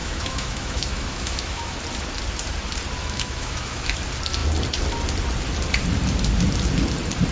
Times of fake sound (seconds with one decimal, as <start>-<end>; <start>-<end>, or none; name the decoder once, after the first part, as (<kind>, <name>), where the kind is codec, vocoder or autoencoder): 0.0-1.8 (autoencoder, DAC-VAE); 3.0-4.0